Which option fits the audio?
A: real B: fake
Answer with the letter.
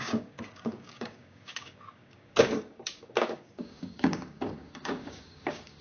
B